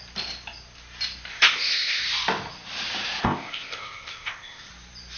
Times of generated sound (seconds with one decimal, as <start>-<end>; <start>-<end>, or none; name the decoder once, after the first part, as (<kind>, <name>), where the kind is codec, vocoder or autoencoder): 1.3-2.0 (codec, ZipCodec); 3.2-4.7